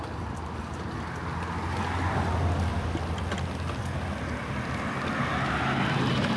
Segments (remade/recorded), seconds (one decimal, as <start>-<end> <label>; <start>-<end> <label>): 0.0-6.4 recorded